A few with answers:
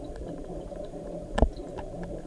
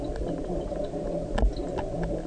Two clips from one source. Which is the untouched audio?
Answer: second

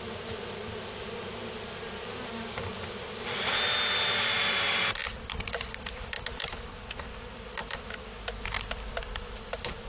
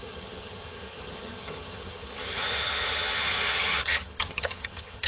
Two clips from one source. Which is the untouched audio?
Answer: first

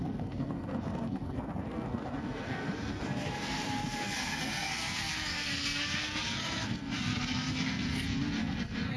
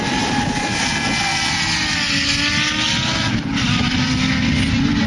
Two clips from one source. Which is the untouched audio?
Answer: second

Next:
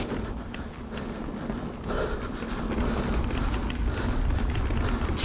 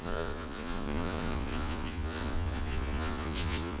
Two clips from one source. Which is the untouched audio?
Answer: first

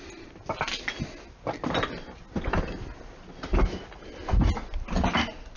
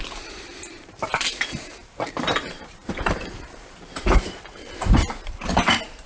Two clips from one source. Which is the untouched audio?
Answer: first